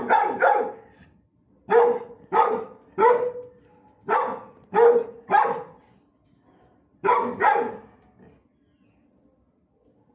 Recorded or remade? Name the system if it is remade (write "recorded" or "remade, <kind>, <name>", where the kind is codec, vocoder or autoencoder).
recorded